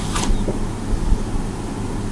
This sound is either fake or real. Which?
real